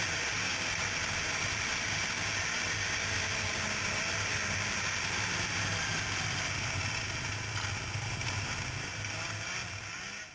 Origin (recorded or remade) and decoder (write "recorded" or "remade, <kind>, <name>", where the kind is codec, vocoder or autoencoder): recorded